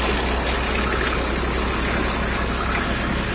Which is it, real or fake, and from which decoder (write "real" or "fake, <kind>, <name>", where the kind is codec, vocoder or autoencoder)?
real